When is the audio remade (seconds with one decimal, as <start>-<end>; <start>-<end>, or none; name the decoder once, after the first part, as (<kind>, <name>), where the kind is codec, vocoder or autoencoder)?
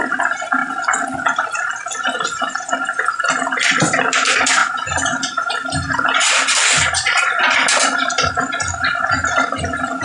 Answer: none